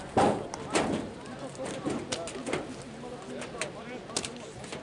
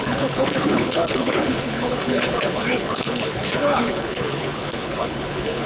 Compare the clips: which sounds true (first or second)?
first